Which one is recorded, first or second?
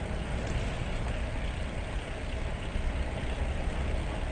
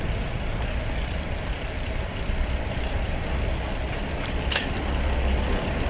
first